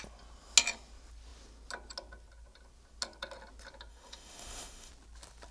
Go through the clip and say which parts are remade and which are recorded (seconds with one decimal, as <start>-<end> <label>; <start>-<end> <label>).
0.0-3.9 recorded; 3.9-4.9 remade; 4.9-5.5 recorded